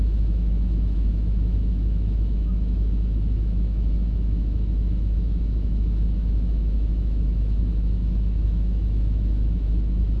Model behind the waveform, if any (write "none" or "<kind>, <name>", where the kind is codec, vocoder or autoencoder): autoencoder, DAC-VAE